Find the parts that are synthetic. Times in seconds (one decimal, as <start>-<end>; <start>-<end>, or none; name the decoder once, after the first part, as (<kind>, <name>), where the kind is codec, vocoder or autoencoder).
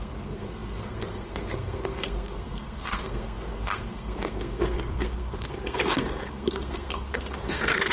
0.0-7.9 (codec, SNAC)